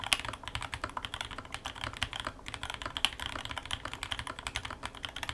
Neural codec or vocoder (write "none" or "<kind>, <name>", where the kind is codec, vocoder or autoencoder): none